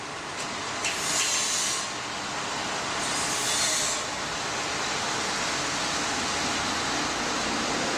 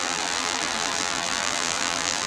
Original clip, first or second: first